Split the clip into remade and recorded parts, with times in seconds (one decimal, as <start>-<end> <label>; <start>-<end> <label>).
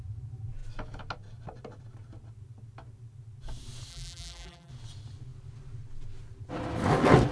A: 0.0-3.9 recorded; 3.9-4.7 remade; 4.7-7.3 recorded